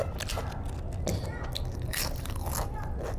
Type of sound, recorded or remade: recorded